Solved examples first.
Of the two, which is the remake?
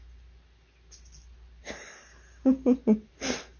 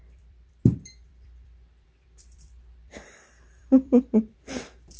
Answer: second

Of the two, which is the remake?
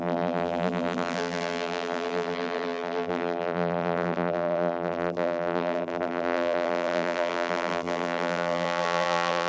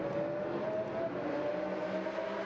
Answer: first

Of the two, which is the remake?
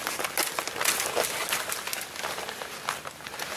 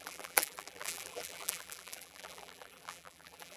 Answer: second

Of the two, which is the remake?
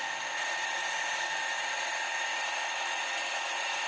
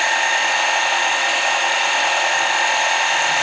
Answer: first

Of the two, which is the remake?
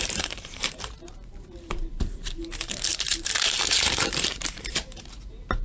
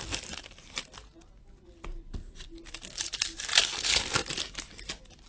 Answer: first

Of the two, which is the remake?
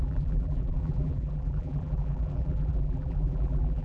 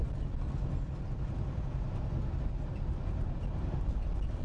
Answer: first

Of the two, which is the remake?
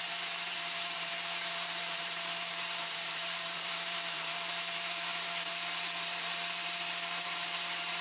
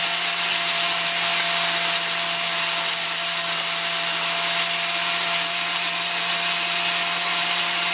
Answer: first